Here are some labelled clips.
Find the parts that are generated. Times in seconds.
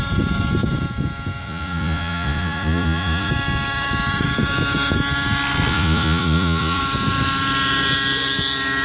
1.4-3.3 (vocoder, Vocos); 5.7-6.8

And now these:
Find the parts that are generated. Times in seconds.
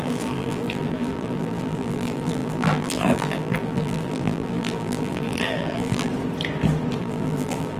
0.0-6.1 (vocoder, BigVGAN v2); 7.0-7.8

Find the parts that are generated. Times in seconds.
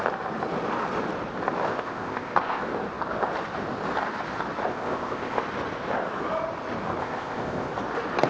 1.7-2.6 (codec, ZipCodec); 4.7-5.4; 7.0-7.7